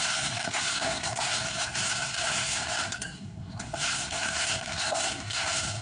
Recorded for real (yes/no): no